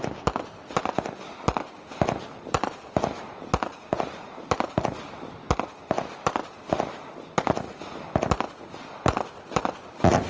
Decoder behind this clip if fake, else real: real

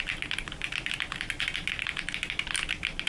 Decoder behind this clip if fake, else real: real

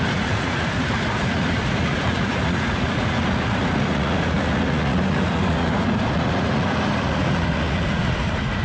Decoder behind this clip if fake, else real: fake, vocoder, Vocos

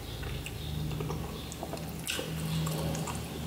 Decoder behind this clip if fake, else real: real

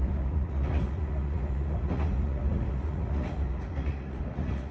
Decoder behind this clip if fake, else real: fake, vocoder, Vocos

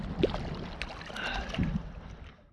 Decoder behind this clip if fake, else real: real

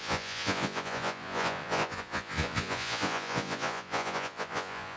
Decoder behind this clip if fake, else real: fake, vocoder, Vocos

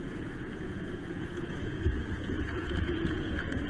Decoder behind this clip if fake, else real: fake, vocoder, Vocos